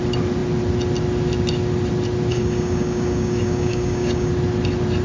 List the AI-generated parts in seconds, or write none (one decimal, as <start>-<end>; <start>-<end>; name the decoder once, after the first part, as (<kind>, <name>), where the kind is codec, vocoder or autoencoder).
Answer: 2.3-4.3 (codec, DAC)